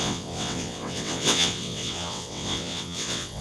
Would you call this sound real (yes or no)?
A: no